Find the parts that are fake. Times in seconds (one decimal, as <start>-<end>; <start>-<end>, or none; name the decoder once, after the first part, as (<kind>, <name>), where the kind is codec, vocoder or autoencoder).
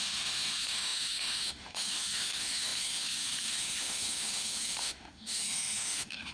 0.0-6.3 (autoencoder, DAC-VAE)